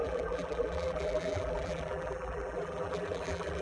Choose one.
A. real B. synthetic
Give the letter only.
B